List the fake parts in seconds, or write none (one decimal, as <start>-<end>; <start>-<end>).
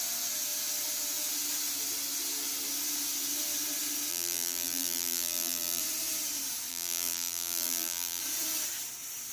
4.1-5.8; 6.7-8.2